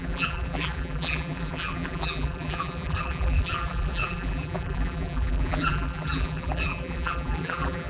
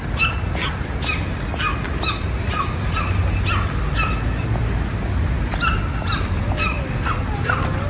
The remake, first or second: first